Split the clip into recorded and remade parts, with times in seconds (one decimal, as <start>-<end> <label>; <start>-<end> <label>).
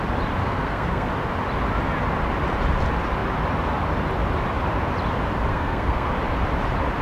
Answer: 0.0-0.4 recorded; 0.4-1.1 remade; 1.1-5.5 recorded; 5.5-6.1 remade; 6.1-7.0 recorded